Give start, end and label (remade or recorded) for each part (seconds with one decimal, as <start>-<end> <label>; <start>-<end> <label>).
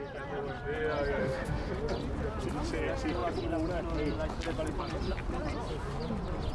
0.0-1.2 recorded; 1.2-1.7 remade; 1.7-6.5 recorded